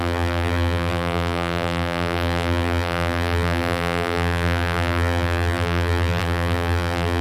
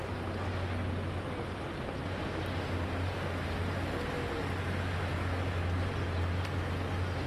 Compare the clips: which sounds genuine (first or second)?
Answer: second